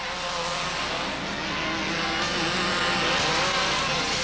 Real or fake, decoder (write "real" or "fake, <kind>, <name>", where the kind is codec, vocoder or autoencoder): real